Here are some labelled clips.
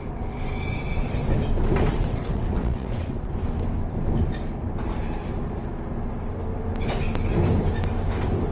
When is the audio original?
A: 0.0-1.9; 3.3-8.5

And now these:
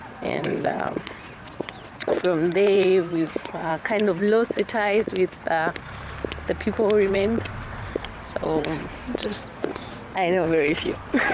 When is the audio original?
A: 5.1-7.1

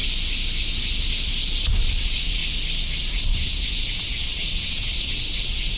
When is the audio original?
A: 0.0-1.7; 2.4-3.0

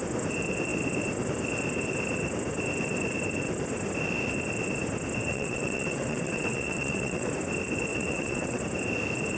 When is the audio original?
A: 0.0-5.3; 7.3-7.9; 8.6-9.4

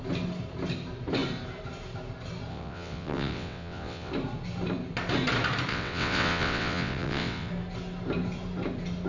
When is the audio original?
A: 0.0-2.5; 4.1-5.7; 7.5-9.1